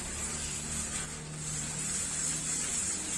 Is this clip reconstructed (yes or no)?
no